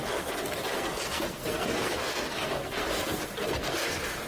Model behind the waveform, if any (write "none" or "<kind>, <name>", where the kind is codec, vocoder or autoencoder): codec, SNAC